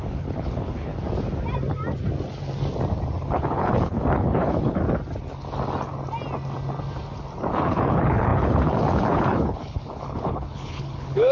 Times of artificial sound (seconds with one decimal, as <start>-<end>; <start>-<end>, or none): 0.0-0.9; 3.2-4.8; 7.5-11.3

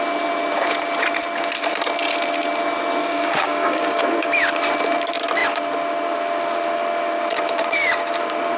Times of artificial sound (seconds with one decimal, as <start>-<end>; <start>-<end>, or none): 3.0-4.0

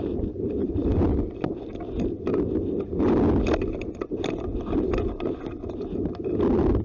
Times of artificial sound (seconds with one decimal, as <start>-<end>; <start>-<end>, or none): none

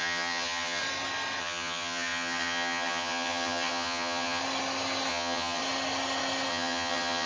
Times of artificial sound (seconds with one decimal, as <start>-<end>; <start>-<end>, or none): 0.0-0.8; 1.4-4.4; 5.1-5.6; 6.5-7.3

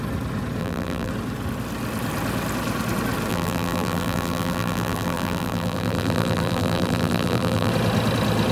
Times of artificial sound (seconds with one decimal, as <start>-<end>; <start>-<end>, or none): 0.6-1.1; 3.3-7.7

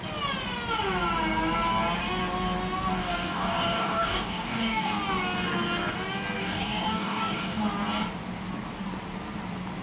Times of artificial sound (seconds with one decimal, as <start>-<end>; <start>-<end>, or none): 2.9-4.9; 6.4-7.6

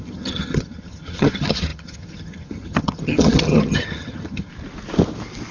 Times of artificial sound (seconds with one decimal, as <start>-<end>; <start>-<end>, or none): 0.0-4.5